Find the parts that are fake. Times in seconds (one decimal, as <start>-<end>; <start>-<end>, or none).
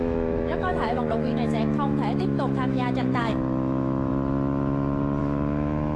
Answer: 0.0-4.1; 5.2-6.0